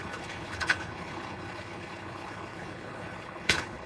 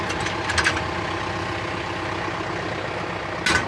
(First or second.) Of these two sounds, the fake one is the first